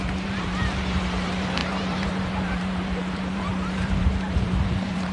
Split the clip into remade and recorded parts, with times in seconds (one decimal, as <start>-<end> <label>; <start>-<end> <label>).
0.0-5.1 remade